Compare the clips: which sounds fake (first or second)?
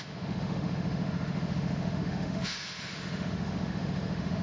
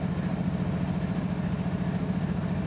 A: first